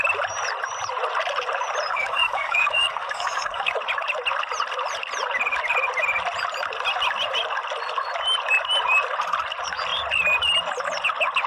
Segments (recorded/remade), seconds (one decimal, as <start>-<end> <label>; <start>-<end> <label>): 0.0-1.9 recorded; 1.9-3.7 remade; 3.7-11.5 recorded